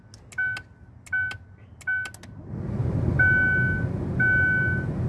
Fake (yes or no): no